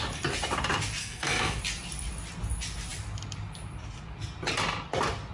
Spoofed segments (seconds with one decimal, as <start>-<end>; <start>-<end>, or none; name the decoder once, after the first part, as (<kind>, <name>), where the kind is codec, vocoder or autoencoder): 1.0-1.6 (codec, SNAC)